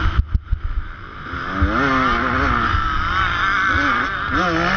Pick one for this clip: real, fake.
real